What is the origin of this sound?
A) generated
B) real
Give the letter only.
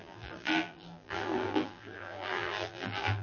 A